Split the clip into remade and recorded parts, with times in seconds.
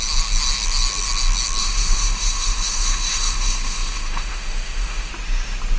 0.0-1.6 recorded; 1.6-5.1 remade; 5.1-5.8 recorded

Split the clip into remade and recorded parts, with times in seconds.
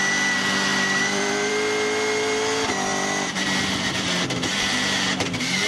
0.0-0.7 recorded; 0.7-1.5 remade; 1.5-2.9 recorded; 2.9-4.5 remade; 4.5-5.7 recorded